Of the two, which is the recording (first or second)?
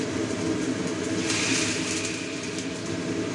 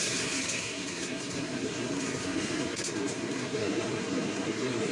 first